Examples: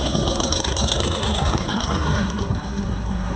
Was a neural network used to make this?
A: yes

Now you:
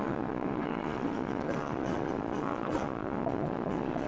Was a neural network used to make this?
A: yes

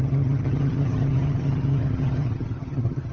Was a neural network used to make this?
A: yes